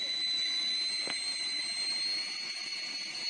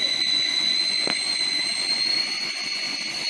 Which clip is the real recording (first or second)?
first